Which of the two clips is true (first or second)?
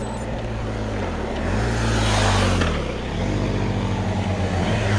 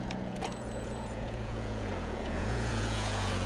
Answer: first